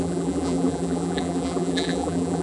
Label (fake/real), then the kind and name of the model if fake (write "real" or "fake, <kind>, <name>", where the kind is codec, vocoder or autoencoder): fake, vocoder, BigVGAN v2